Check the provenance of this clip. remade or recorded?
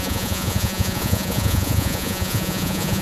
remade